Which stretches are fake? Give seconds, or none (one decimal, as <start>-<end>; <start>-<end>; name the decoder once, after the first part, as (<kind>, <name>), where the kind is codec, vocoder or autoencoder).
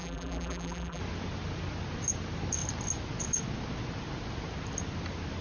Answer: 0.0-1.0 (vocoder, BigVGAN v2)